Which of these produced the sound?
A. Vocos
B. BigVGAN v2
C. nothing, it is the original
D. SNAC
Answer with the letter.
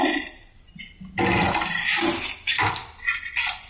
C